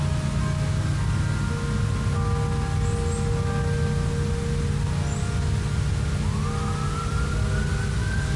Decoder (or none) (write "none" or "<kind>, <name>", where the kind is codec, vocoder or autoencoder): none